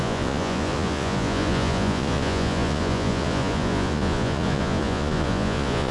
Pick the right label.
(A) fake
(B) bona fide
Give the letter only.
A